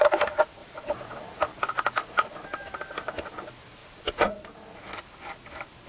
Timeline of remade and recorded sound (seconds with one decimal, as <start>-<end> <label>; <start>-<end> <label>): 0.0-0.6 recorded; 0.6-1.7 remade; 1.7-3.8 recorded; 3.8-4.5 remade; 4.5-5.9 recorded